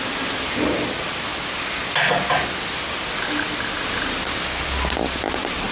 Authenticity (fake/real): real